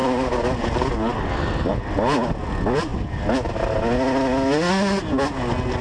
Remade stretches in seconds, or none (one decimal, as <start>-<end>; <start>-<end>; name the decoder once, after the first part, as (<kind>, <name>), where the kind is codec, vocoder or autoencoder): none